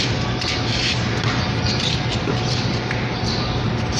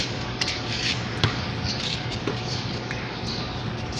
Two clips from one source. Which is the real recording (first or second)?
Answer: first